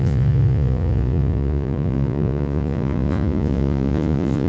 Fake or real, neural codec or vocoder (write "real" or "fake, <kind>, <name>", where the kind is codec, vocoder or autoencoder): fake, vocoder, Vocos